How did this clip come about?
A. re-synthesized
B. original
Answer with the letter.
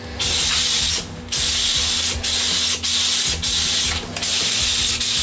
B